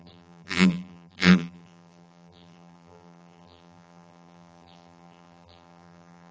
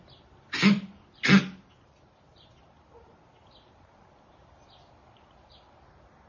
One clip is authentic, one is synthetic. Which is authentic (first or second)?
second